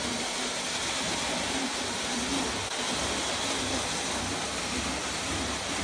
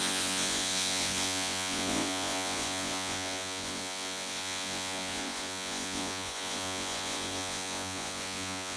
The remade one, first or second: second